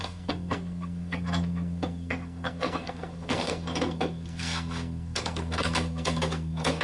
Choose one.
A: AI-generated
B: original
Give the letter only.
A